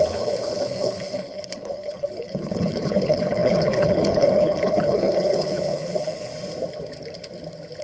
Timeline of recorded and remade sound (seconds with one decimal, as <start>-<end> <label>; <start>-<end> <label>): 0.0-6.3 remade; 6.3-7.8 recorded